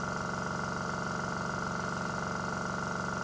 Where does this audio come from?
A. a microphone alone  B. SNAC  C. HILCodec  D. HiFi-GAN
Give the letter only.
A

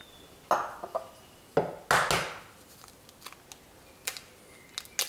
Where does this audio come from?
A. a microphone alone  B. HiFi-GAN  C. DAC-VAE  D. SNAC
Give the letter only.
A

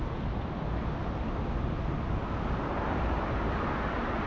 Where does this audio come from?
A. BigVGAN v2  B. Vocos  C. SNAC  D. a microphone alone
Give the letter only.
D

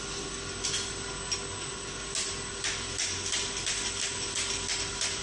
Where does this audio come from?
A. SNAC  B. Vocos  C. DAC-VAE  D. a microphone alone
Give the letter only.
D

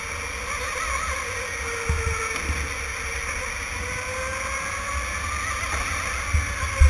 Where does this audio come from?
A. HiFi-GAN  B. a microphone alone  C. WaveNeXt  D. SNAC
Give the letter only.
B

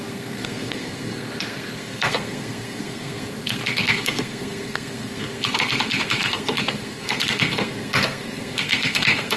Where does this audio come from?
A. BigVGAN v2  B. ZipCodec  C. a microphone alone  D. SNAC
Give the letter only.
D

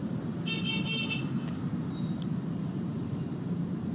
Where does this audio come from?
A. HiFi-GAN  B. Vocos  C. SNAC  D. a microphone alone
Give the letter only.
D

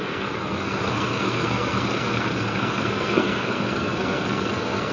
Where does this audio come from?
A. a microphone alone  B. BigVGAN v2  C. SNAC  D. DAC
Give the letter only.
C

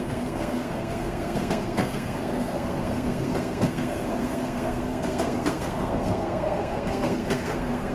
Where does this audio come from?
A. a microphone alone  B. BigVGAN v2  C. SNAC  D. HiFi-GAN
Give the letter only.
C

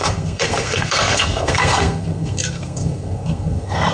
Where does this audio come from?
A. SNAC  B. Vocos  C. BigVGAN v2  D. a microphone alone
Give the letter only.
A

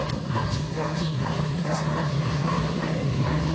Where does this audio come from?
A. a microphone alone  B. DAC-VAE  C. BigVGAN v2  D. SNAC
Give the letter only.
D